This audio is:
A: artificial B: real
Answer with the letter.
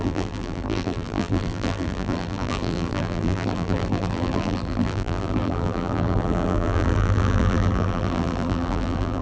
A